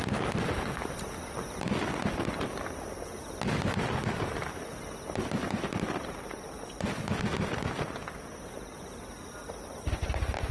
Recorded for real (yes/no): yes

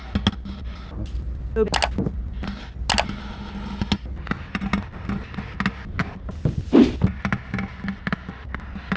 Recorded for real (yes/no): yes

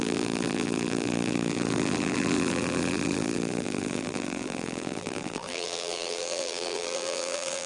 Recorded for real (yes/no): no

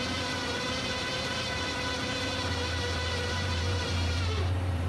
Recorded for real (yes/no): no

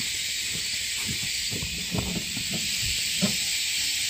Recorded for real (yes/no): no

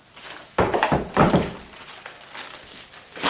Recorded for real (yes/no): no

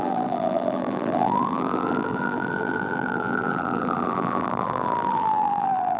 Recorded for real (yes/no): no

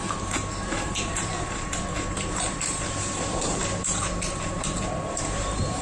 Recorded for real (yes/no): no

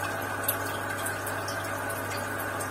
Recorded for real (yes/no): yes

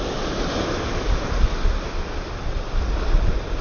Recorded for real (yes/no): yes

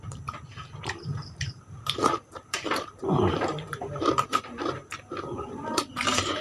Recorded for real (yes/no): no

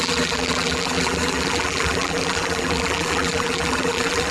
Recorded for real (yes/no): no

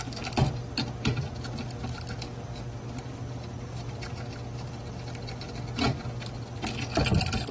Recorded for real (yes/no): yes